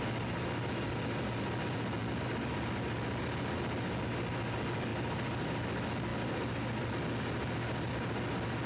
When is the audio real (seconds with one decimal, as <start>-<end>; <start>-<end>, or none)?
0.0-8.7